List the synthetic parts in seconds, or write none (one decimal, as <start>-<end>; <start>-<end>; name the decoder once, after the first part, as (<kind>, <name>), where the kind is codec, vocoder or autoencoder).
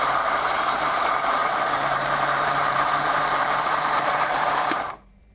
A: 0.0-5.3 (vocoder, BigVGAN v2)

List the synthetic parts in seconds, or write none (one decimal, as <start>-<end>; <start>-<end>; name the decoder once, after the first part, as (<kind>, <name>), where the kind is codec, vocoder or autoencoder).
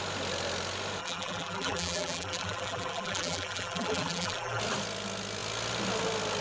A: 1.0-4.6 (vocoder, BigVGAN v2)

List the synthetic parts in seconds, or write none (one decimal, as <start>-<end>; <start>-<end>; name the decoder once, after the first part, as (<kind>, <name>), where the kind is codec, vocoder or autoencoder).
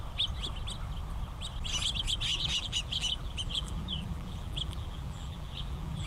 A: 2.3-6.1 (vocoder, BigVGAN v2)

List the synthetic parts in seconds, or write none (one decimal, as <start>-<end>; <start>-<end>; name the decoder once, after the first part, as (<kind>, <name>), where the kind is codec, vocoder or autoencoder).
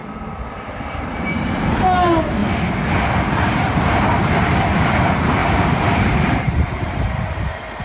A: 0.7-2.4 (vocoder, BigVGAN v2); 3.4-5.4; 6.1-7.8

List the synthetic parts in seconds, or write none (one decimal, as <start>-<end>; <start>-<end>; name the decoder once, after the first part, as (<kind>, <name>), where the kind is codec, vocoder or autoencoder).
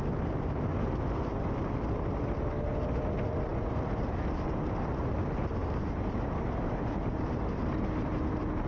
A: 5.6-6.2 (vocoder, BigVGAN v2)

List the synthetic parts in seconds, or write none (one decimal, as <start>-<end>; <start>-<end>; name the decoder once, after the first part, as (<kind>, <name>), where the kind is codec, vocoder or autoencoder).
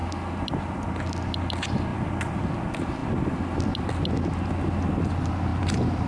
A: 1.9-2.4 (vocoder, BigVGAN v2); 5.5-6.1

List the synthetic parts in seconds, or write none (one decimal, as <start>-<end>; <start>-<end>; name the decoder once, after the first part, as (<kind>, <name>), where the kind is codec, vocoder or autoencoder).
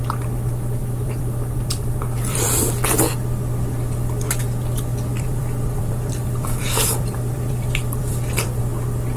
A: 0.8-2.7 (vocoder, BigVGAN v2); 5.1-8.6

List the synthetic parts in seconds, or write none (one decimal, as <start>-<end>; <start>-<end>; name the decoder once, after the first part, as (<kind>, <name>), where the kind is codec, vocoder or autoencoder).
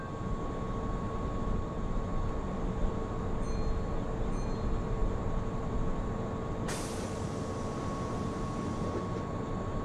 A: none